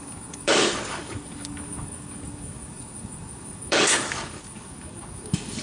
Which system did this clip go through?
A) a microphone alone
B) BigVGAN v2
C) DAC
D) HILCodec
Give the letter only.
C